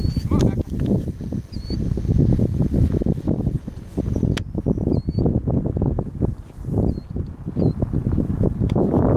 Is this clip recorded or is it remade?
recorded